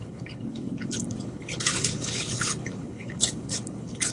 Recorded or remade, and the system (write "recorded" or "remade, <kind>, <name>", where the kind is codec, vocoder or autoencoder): remade, codec, HILCodec